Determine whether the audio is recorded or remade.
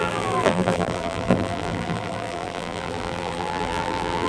remade